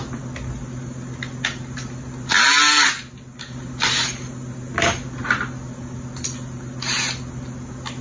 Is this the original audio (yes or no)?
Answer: yes